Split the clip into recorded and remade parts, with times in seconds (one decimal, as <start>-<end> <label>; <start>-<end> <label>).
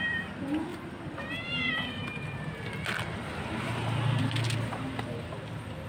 0.0-5.9 recorded